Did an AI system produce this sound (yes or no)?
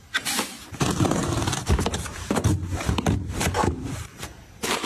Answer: yes